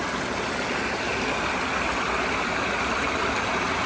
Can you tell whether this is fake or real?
real